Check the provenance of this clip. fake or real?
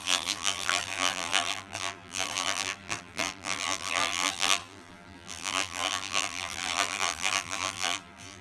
fake